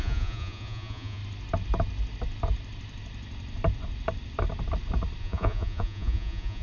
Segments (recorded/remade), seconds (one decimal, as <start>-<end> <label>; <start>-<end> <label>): 0.0-1.2 remade; 1.2-5.2 recorded; 5.2-6.6 remade